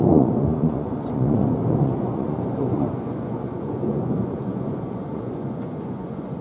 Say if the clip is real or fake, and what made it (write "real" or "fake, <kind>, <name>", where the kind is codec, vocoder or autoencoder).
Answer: fake, vocoder, Vocos